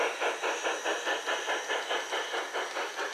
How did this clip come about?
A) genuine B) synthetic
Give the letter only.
A